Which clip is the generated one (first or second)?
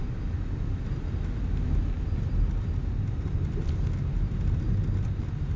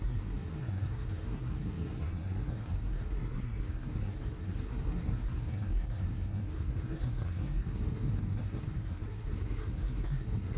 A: second